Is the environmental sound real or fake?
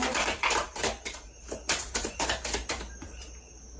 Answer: fake